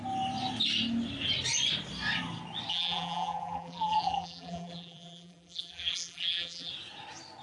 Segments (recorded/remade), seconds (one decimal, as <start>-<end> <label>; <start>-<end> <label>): 0.0-2.7 recorded; 2.7-6.7 remade; 6.7-7.4 recorded